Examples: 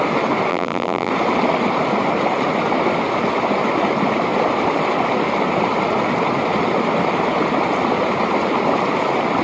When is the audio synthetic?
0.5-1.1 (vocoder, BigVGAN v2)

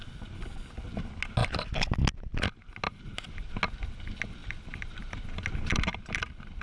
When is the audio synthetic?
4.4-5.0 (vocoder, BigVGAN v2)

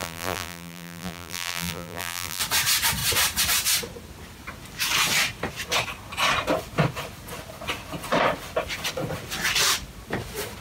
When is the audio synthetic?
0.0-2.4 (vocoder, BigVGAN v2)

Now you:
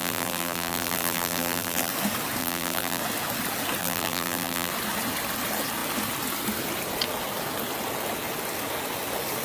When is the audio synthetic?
0.0-1.9 (vocoder, BigVGAN v2); 2.4-3.0; 3.8-4.7